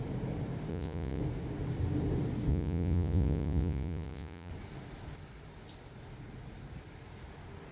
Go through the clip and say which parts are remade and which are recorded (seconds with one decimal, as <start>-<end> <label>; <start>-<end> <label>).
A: 0.0-0.7 recorded; 0.7-1.2 remade; 1.2-2.5 recorded; 2.5-4.5 remade; 4.5-7.7 recorded

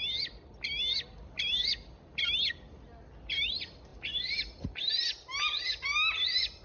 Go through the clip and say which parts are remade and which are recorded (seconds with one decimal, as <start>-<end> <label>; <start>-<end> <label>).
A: 0.0-6.6 recorded